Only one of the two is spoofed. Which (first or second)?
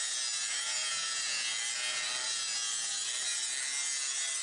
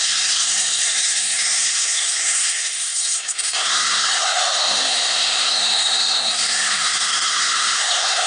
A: second